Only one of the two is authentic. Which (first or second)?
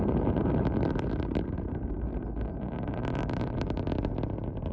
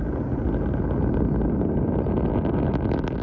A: second